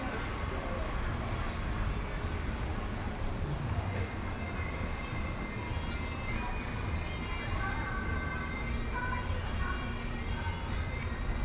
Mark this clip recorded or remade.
recorded